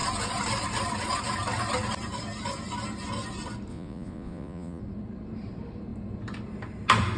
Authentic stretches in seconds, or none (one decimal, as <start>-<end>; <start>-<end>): 0.0-3.7; 4.8-7.2